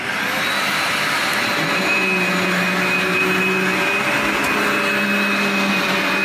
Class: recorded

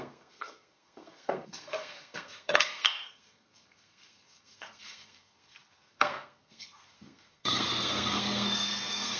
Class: remade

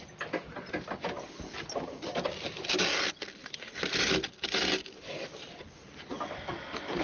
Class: recorded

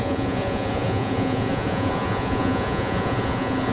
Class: remade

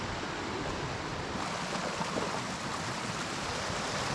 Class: recorded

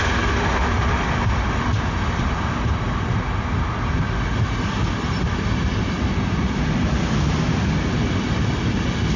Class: recorded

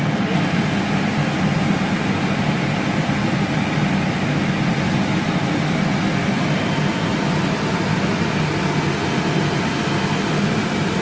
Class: recorded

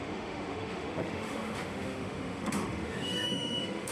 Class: remade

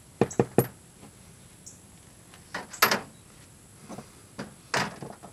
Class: recorded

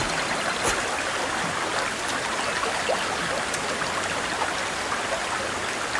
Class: recorded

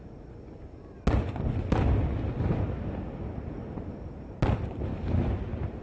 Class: recorded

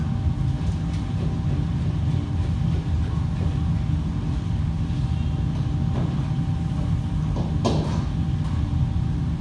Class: recorded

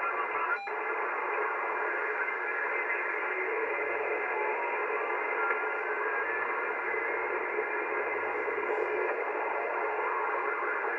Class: recorded